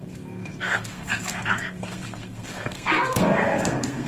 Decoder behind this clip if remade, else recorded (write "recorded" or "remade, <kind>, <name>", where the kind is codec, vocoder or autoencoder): remade, codec, SNAC